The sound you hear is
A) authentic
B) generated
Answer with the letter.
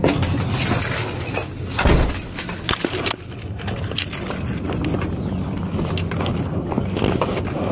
A